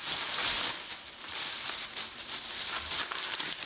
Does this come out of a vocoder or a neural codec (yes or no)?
no